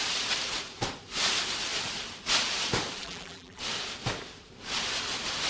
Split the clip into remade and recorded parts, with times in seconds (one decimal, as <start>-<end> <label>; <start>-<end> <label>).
0.0-3.0 recorded; 3.0-3.6 remade; 3.6-5.5 recorded